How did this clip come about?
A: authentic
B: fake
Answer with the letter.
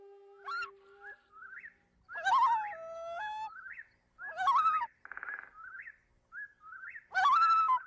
A